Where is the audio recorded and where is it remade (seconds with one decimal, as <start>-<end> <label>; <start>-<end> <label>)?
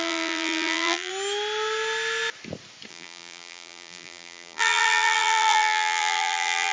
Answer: 0.0-1.1 remade; 1.1-2.9 recorded; 2.9-6.7 remade